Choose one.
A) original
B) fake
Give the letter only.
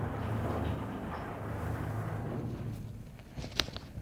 A